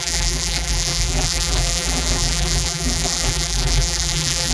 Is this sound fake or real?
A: fake